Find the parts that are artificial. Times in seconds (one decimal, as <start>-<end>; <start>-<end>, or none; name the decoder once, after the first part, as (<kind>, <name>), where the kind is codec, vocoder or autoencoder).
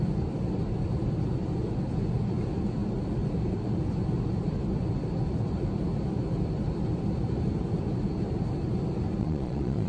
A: 9.2-9.9 (vocoder, Vocos)